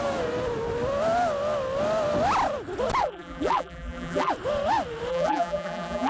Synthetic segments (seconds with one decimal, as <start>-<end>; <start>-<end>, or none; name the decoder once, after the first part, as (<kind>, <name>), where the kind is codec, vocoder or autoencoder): 3.0-4.3 (vocoder, BigVGAN v2); 5.1-6.1